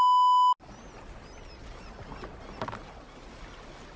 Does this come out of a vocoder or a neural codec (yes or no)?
no